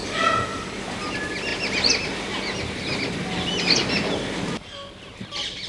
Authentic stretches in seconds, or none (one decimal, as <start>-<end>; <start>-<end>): 0.8-5.7